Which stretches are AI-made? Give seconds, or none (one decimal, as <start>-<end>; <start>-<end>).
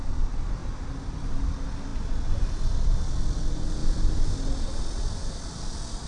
none